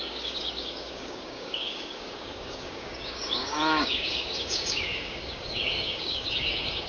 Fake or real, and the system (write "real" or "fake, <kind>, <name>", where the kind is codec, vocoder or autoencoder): fake, codec, DAC